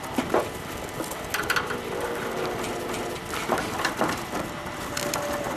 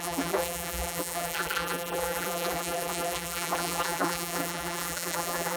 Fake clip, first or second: second